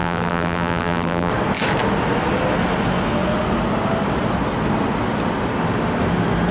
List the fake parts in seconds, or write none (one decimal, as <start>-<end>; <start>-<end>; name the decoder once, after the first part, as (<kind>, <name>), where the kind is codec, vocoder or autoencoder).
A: 0.0-1.3 (vocoder, BigVGAN v2)